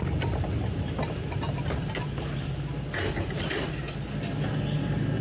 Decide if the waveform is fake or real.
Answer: real